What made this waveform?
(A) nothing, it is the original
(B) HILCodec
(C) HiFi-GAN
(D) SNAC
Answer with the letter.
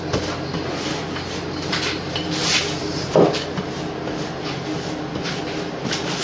A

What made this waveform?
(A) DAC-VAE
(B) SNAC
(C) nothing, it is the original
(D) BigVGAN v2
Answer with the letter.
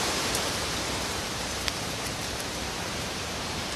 D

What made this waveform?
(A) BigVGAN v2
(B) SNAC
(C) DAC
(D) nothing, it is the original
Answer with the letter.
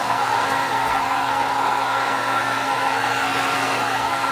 B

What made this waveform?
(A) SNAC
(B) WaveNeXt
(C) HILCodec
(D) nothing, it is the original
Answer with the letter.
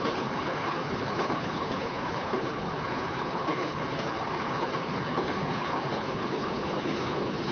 C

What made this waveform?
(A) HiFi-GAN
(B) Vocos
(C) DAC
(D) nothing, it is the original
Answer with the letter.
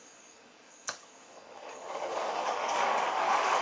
C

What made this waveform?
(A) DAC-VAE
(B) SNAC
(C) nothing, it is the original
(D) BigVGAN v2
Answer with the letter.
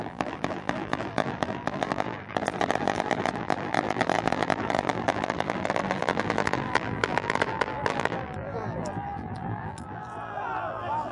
D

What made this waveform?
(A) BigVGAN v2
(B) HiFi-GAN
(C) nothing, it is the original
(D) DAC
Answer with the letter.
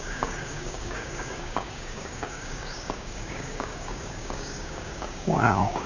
D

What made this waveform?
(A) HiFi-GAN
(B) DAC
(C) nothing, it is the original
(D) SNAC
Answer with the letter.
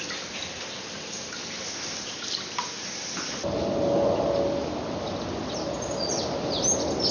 C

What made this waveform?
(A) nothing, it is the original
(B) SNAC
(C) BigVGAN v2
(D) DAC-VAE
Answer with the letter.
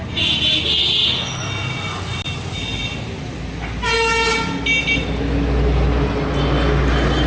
A